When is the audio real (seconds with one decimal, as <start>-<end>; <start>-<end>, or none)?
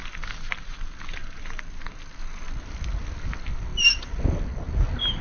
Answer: 0.0-5.2